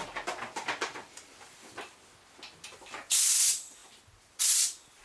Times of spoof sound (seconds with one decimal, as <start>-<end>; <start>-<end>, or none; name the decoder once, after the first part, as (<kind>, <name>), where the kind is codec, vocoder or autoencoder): none